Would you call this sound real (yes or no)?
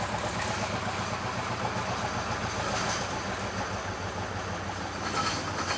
yes